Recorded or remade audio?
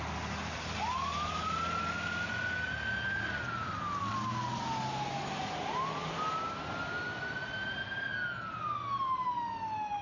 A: recorded